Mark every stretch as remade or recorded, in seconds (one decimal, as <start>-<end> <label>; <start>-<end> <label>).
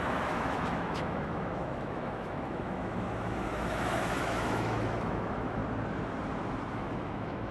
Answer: 0.0-5.6 remade; 5.6-6.7 recorded; 6.7-7.5 remade